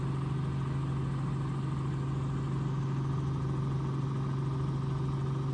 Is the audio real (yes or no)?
yes